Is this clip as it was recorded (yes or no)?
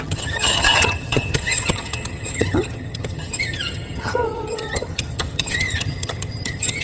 no